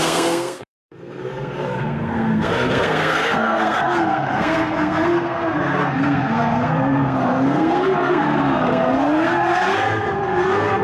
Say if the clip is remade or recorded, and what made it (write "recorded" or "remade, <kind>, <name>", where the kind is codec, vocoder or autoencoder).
remade, codec, SNAC